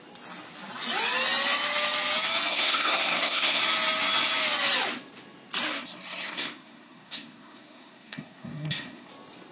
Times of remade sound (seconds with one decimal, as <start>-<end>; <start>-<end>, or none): 2.5-3.6; 5.7-9.1